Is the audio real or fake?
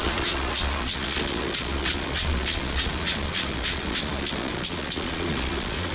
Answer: fake